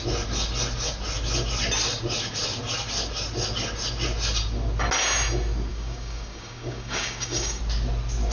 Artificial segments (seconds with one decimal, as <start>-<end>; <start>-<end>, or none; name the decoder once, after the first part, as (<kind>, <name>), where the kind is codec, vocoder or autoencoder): 5.7-7.6 (codec, DAC)

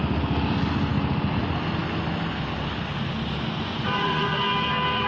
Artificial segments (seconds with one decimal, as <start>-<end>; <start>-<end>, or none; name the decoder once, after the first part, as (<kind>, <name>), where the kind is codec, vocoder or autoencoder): 3.6-4.4 (vocoder, Vocos)

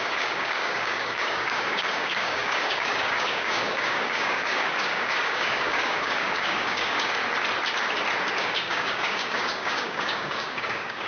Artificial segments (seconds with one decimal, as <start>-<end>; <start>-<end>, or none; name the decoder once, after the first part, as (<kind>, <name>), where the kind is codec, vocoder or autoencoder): 0.0-7.2 (codec, DAC); 8.3-11.1

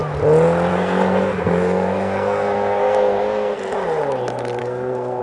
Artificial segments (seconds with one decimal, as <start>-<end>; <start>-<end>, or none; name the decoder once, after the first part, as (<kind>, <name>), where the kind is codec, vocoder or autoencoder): 0.7-3.6 (codec, SNAC); 4.6-5.2

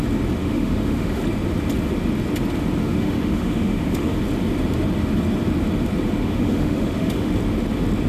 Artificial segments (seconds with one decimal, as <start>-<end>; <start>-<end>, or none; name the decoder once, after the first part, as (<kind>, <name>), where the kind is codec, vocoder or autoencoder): 0.4-1.2 (autoencoder, DAC-VAE); 2.8-4.2; 6.2-7.3

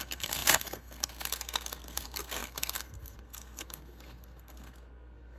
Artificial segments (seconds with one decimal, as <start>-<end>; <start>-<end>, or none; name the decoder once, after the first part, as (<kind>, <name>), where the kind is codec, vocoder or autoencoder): 0.0-5.4 (codec, SNAC)